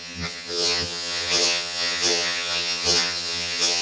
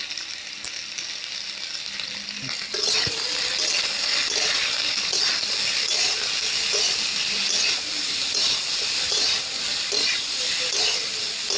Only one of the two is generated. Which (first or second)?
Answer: first